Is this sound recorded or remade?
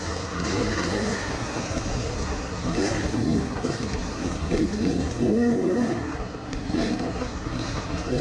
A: remade